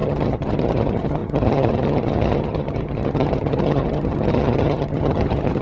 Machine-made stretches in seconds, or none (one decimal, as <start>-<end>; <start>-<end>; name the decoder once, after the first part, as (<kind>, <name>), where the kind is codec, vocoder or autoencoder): 0.0-5.6 (vocoder, HiFi-GAN)

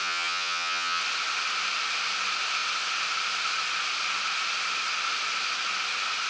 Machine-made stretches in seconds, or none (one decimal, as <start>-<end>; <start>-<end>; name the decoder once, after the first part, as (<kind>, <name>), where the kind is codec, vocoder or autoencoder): 0.0-1.0 (vocoder, HiFi-GAN)

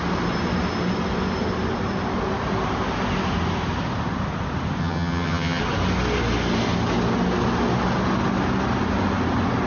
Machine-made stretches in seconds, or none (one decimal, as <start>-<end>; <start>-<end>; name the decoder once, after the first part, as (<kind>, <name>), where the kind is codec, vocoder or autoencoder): 4.8-5.6 (vocoder, HiFi-GAN)

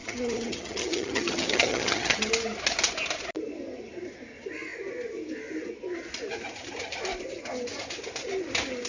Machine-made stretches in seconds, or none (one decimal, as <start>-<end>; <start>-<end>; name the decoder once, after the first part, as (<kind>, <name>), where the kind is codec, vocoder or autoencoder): 0.0-2.3 (vocoder, HiFi-GAN)

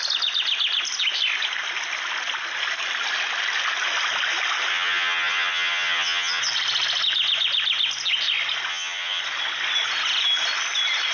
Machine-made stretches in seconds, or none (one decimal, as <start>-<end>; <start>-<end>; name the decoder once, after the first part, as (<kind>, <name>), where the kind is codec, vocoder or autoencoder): 4.7-6.4 (vocoder, HiFi-GAN); 8.7-9.2

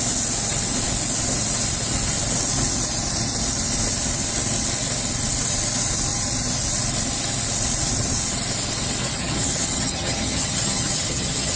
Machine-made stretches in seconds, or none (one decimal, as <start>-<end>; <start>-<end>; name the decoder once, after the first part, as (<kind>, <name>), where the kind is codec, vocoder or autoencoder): 9.0-11.6 (vocoder, HiFi-GAN)

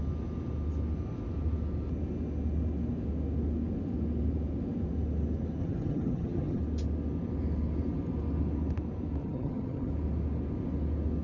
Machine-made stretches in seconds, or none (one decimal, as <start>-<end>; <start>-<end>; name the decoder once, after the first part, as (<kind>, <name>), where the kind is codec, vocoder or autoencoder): 5.6-6.6 (vocoder, HiFi-GAN); 9.2-9.9

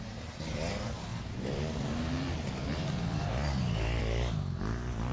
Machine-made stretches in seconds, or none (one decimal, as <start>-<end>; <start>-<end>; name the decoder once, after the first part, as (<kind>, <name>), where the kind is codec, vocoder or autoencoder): none